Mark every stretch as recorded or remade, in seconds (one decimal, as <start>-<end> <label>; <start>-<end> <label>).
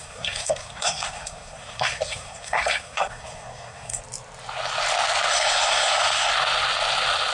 0.0-4.0 remade; 4.0-5.3 recorded; 5.3-6.3 remade; 6.3-7.3 recorded